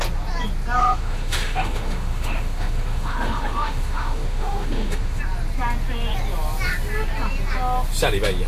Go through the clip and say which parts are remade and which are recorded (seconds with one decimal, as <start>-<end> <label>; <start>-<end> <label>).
0.0-0.8 recorded; 0.8-5.2 remade; 5.2-8.5 recorded